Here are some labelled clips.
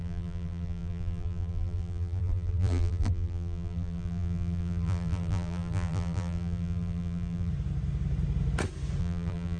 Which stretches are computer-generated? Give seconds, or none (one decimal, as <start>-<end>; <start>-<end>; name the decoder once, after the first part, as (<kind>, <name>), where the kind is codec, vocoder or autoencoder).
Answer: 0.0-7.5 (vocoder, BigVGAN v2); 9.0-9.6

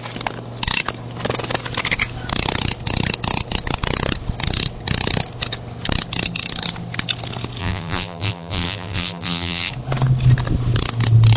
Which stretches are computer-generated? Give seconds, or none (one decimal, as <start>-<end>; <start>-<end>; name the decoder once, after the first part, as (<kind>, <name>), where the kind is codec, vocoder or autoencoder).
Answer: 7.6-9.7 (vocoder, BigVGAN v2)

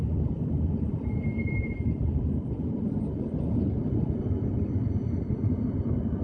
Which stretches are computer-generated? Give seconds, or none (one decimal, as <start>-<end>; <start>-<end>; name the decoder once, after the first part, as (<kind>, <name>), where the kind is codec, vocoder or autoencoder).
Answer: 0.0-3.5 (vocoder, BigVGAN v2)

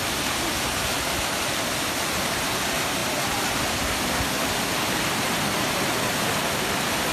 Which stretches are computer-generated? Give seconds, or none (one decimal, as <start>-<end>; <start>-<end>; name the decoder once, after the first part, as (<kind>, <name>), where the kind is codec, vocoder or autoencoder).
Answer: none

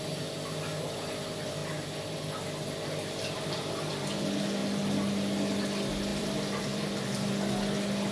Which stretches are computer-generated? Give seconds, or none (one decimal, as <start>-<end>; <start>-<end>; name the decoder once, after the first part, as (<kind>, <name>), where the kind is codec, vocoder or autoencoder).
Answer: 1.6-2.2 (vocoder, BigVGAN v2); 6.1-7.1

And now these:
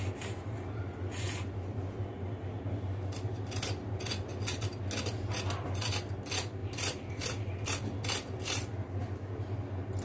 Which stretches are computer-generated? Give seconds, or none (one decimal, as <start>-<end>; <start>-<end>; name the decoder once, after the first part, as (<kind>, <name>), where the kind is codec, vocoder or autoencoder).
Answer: 6.6-9.5 (vocoder, BigVGAN v2)

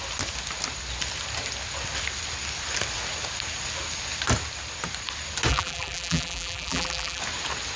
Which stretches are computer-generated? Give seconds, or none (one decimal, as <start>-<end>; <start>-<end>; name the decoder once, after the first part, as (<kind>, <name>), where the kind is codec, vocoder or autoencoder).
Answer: 5.5-7.2 (vocoder, BigVGAN v2)